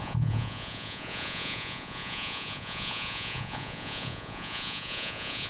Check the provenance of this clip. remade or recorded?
remade